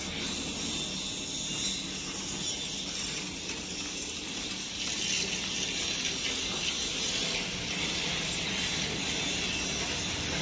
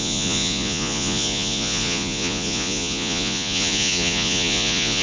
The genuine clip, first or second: first